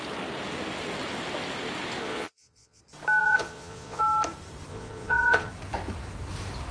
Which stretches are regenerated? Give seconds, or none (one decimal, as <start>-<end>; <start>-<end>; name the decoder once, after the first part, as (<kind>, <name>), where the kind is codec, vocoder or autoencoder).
2.0-2.8 (vocoder, Vocos); 3.2-4.0; 4.7-5.5